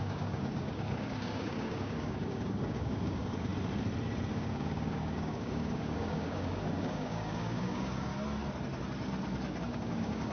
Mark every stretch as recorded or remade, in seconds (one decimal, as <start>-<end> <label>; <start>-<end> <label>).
0.0-3.5 remade; 3.5-4.3 recorded; 4.3-8.1 remade; 8.1-9.6 recorded; 9.6-10.3 remade